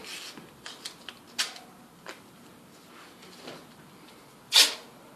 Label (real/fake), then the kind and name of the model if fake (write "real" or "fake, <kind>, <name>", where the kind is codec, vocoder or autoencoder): real